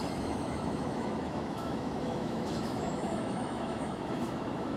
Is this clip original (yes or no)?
no